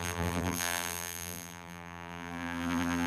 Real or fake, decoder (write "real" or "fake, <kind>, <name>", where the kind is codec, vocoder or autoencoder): fake, vocoder, BigVGAN v2